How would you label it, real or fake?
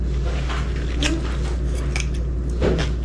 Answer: real